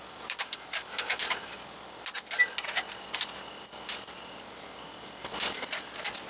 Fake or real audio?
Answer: real